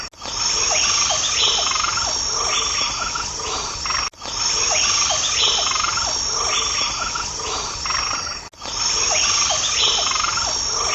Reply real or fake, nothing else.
real